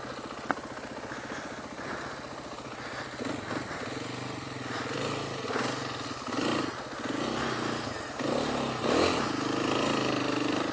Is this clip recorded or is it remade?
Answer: recorded